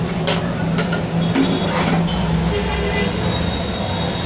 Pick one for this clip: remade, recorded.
recorded